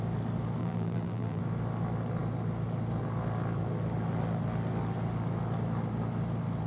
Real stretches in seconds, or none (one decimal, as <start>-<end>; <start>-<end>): 0.0-0.6; 1.4-6.7